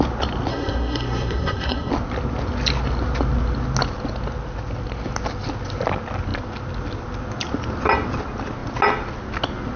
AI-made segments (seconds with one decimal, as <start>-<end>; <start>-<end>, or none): 0.5-1.9